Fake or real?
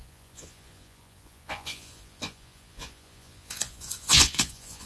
fake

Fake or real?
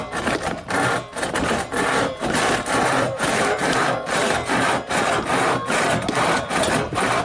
real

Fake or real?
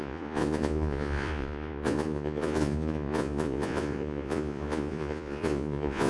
fake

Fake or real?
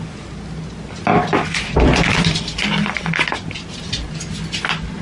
real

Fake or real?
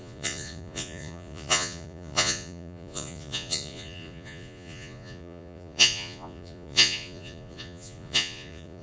fake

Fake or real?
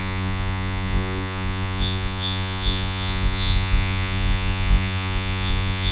fake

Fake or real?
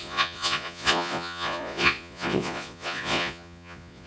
fake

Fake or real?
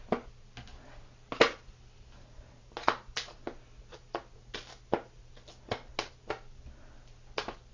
real